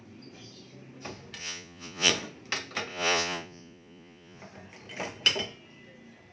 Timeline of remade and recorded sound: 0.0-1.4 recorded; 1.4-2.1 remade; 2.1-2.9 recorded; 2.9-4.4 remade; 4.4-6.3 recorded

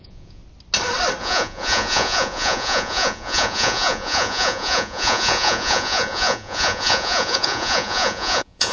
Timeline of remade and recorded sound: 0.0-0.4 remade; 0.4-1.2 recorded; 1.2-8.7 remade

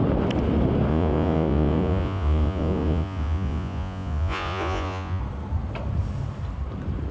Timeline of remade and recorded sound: 0.0-0.9 recorded; 0.9-5.2 remade; 5.2-7.1 recorded

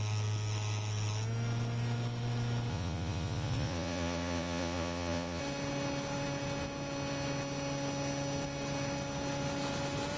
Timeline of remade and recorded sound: 0.0-2.7 recorded; 2.7-5.4 remade; 5.4-10.2 recorded

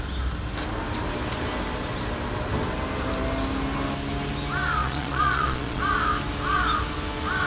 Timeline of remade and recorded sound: 0.0-4.8 recorded; 4.8-5.8 remade; 5.8-7.5 recorded